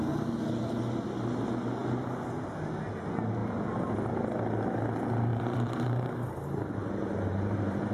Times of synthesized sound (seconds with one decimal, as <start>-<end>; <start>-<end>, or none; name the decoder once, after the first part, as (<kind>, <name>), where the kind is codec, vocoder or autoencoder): 5.3-7.9 (vocoder, BigVGAN v2)